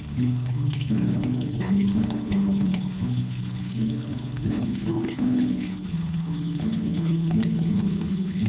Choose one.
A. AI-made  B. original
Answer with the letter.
A